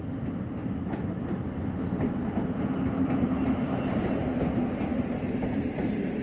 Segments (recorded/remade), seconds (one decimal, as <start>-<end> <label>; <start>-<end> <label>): 0.0-6.2 recorded